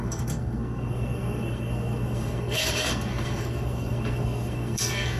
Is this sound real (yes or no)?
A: no